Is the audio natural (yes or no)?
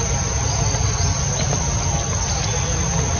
yes